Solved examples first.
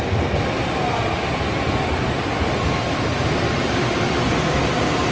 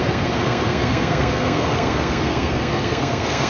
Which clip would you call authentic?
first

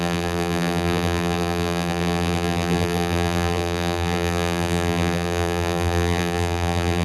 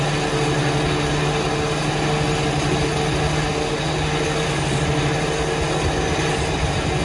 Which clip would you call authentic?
second